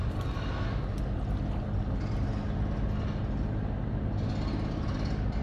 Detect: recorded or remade recorded